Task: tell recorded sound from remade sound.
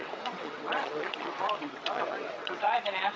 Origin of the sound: remade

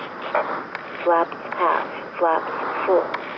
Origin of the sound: recorded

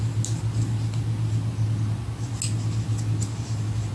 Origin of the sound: recorded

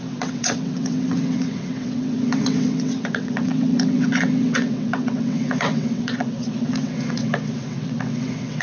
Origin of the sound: remade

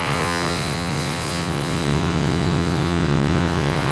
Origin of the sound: remade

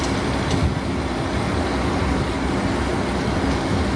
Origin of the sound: recorded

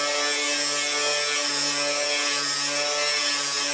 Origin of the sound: recorded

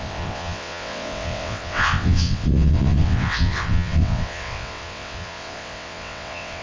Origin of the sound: remade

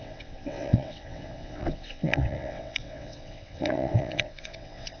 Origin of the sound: remade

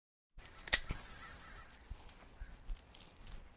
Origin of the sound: recorded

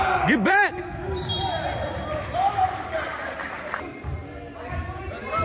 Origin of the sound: recorded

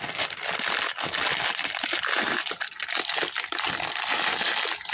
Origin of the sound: recorded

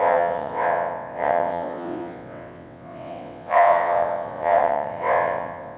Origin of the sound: remade